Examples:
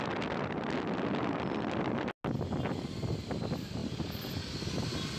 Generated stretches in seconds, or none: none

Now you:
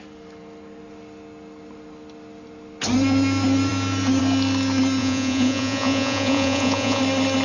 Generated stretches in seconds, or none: 5.0-7.0 (vocoder, Vocos)

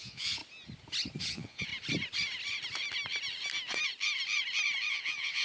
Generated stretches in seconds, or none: 0.0-0.4 (vocoder, Vocos); 1.2-1.7; 4.9-5.4

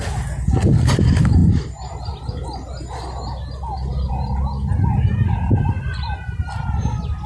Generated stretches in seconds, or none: none

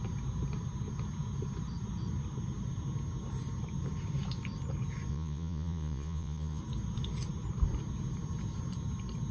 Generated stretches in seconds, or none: 5.1-6.6 (vocoder, Vocos)

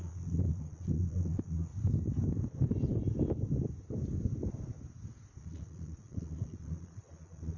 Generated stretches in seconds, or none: 0.0-1.7 (vocoder, Vocos); 5.4-7.6